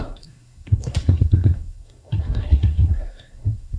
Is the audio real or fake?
fake